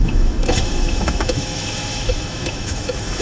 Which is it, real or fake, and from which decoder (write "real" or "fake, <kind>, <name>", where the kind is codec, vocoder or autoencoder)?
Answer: fake, autoencoder, DAC-VAE